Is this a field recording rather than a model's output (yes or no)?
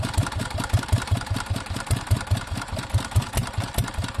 no